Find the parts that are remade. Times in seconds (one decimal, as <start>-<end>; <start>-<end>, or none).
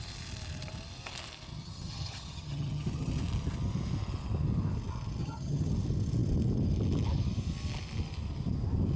1.5-3.1; 5.2-5.7